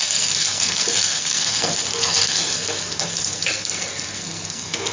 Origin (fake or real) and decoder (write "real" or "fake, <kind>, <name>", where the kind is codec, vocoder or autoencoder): fake, codec, SNAC